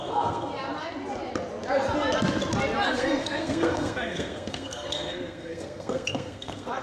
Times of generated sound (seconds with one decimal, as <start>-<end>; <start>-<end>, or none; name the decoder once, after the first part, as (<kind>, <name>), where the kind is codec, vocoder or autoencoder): 0.0-0.5 (codec, SNAC); 2.9-6.8